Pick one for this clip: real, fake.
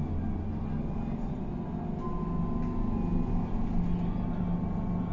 real